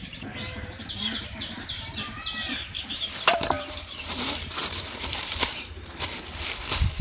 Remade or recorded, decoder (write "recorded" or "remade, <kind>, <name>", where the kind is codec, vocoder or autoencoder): remade, vocoder, BigVGAN v2